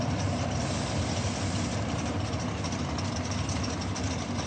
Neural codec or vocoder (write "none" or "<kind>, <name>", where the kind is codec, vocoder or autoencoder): none